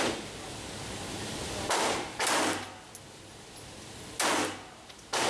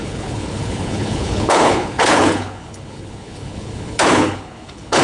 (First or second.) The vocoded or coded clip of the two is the second